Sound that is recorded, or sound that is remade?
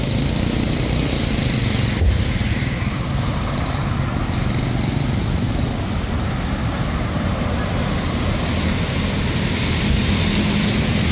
recorded